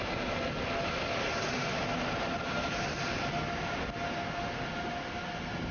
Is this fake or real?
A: real